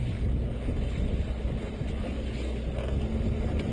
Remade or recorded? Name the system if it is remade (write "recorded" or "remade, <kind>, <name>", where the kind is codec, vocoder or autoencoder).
recorded